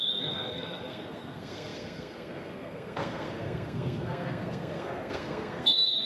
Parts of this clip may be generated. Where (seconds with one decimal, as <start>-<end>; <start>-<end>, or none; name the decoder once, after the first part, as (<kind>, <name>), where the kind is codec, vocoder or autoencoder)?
0.0-6.1 (codec, SNAC)